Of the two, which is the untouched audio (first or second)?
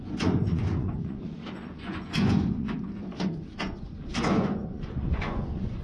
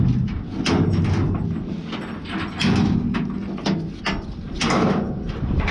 second